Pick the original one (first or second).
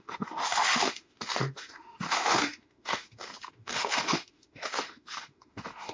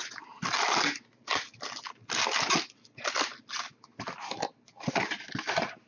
second